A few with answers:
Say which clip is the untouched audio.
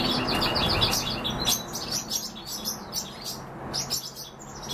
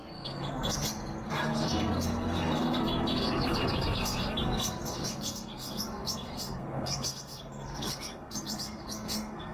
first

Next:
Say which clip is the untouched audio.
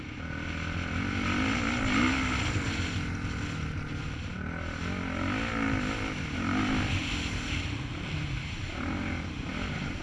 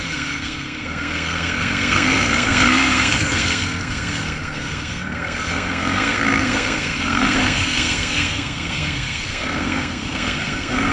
first